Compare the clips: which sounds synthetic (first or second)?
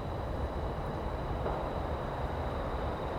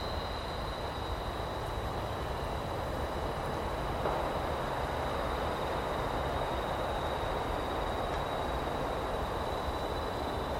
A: first